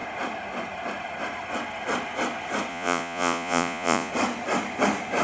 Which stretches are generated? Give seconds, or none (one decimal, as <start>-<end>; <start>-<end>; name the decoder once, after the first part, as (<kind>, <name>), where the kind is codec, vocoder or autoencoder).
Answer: 2.7-4.1 (vocoder, Vocos)